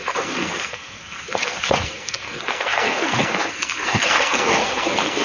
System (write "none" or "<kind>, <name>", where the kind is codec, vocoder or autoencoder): codec, SNAC